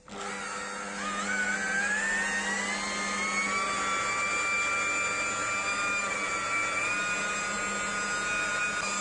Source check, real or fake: real